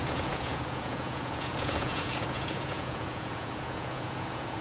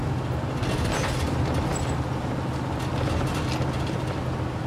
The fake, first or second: first